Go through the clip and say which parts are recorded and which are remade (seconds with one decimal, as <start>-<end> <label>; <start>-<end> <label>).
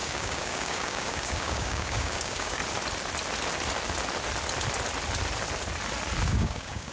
0.0-2.6 remade; 2.6-6.2 recorded; 6.2-6.9 remade